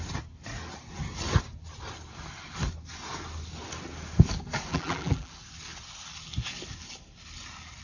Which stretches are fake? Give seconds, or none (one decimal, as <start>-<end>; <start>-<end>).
4.7-5.3